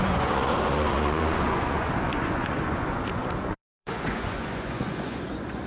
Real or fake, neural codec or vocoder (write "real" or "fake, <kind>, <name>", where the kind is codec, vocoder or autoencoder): fake, vocoder, Vocos